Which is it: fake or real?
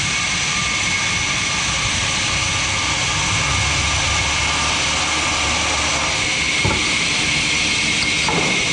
real